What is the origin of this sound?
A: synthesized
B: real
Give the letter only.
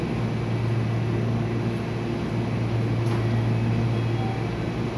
B